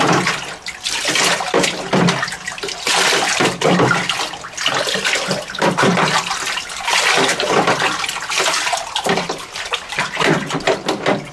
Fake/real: real